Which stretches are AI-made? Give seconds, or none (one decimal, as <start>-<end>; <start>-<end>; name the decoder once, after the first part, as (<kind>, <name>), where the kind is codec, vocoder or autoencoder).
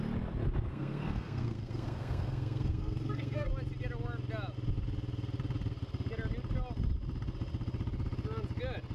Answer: 0.7-3.5 (codec, SNAC)